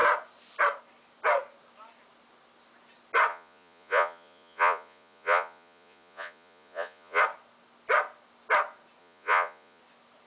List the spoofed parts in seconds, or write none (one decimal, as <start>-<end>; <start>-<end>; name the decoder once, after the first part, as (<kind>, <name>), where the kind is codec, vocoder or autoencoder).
3.3-7.2 (vocoder, Vocos); 9.0-9.8